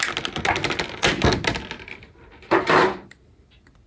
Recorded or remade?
recorded